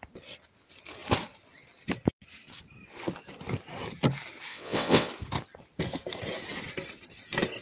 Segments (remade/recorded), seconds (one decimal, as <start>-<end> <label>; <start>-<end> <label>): 0.0-4.5 recorded; 4.5-5.1 remade; 5.1-7.6 recorded